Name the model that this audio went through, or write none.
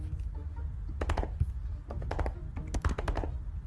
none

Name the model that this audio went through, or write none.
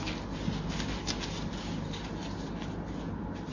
none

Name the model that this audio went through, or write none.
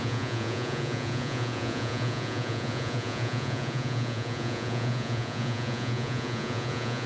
vocoder, Vocos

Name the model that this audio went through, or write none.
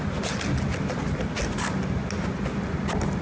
none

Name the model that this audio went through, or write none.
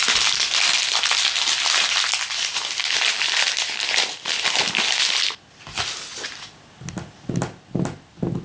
none